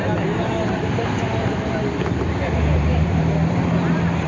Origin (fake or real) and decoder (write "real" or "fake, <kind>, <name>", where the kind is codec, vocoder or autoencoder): fake, vocoder, BigVGAN v2